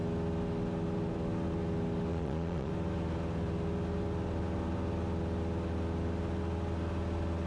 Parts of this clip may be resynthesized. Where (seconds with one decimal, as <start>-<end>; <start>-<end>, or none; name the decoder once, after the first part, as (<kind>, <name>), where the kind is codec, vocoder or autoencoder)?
2.1-2.7 (vocoder, Vocos)